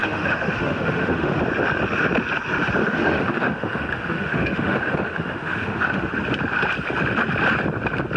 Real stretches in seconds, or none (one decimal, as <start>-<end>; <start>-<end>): 1.4-2.8; 6.1-8.2